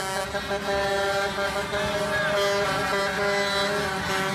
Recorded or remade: recorded